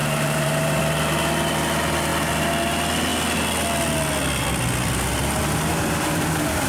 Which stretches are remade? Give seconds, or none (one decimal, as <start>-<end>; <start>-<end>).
0.0-0.8